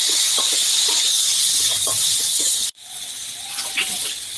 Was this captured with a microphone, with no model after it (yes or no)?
no